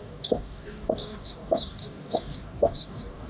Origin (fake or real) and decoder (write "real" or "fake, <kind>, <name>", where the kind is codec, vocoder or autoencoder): fake, codec, DAC